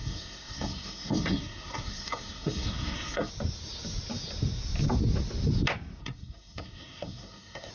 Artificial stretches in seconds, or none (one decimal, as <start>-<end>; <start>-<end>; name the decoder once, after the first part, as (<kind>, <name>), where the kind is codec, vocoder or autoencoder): 0.0-3.3 (codec, SNAC); 6.0-7.7